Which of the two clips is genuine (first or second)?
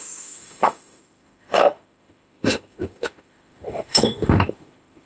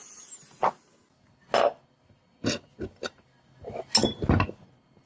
second